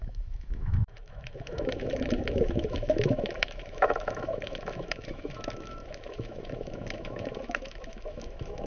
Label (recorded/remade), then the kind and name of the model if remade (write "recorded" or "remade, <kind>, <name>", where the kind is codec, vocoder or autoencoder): remade, autoencoder, DAC-VAE